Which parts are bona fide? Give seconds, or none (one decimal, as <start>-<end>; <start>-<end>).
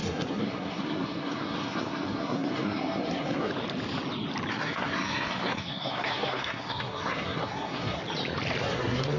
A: 3.5-4.5; 8.0-8.6